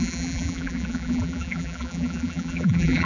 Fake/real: fake